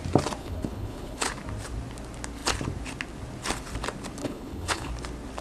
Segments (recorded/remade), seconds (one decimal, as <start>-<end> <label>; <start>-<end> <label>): 0.0-0.4 recorded; 0.4-1.3 remade; 1.3-4.2 recorded; 4.2-4.9 remade; 4.9-5.4 recorded